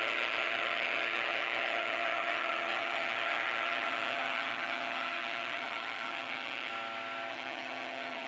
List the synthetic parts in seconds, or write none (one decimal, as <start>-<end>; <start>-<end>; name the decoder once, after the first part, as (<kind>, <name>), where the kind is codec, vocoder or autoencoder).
0.0-6.7 (vocoder, HiFi-GAN); 7.3-8.3